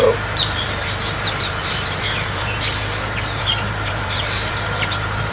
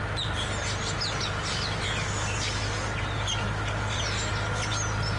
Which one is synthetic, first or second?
first